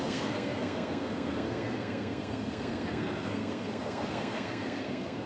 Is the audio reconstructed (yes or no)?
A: yes